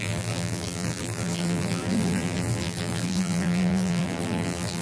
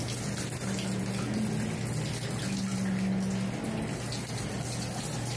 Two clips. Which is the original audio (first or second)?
second